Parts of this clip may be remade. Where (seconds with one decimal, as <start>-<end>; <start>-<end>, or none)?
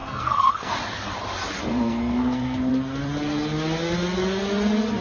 0.0-0.7; 1.6-2.7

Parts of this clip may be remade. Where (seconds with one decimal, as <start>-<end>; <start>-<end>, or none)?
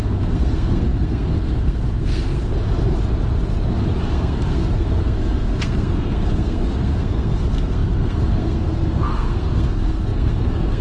0.0-2.5; 4.0-10.8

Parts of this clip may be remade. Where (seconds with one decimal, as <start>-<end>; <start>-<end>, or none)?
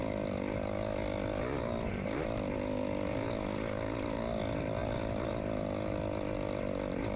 none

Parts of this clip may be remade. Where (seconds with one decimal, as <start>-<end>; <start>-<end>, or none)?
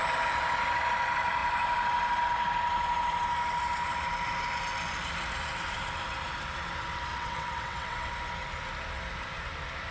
7.1-8.1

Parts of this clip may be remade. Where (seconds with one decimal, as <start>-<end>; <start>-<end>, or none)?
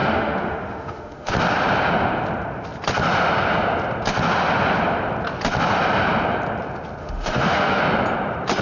0.0-1.3; 7.0-7.8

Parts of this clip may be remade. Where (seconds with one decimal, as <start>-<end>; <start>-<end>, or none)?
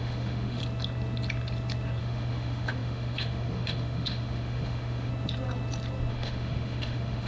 0.0-0.6; 2.0-5.1; 6.1-7.3